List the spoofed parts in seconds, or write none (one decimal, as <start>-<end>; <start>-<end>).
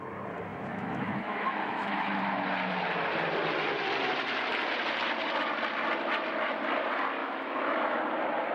0.5-2.2; 7.2-8.0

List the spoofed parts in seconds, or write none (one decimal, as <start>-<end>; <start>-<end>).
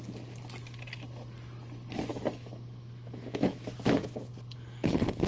2.1-4.3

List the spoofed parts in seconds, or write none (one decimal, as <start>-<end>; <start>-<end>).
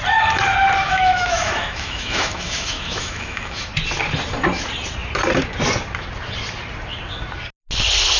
0.8-3.7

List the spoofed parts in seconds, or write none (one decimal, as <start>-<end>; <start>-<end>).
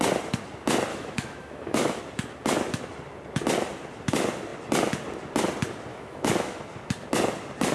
0.9-2.0; 5.9-6.6